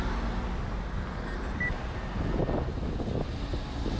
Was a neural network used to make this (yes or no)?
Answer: no